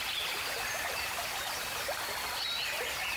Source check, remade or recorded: recorded